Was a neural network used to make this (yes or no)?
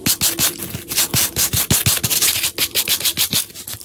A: no